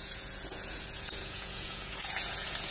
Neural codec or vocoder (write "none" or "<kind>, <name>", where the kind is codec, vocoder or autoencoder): vocoder, Vocos